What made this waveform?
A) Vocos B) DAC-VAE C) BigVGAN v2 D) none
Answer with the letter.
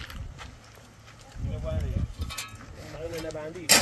D